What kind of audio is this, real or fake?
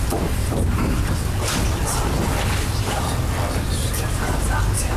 real